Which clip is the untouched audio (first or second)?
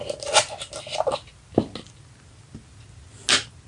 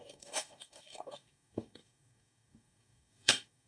first